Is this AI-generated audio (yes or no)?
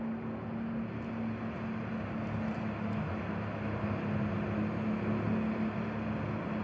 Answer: no